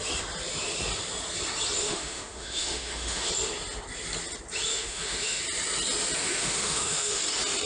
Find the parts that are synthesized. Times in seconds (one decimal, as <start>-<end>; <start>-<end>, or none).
1.8-3.3; 4.7-5.4; 6.2-7.2